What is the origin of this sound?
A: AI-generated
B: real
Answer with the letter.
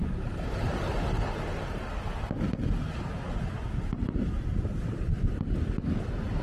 B